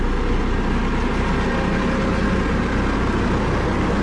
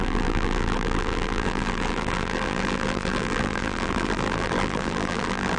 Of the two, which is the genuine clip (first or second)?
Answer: first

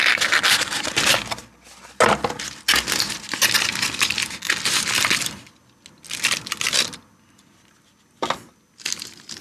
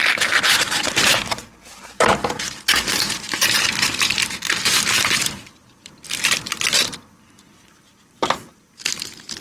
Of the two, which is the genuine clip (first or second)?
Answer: first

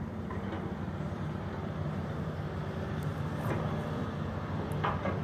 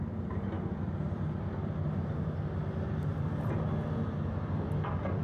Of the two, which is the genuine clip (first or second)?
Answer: second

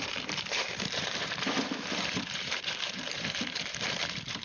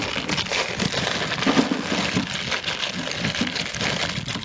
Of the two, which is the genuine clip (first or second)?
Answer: second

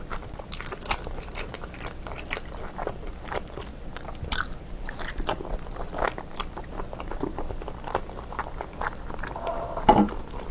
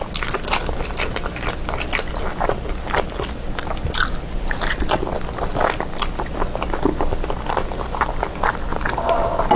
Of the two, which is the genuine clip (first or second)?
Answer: second